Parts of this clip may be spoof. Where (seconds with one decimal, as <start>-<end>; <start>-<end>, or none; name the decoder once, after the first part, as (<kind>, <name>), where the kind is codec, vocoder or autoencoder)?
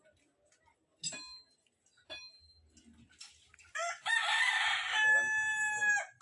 none